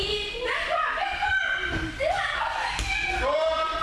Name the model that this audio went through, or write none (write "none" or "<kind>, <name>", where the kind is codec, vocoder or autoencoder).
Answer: none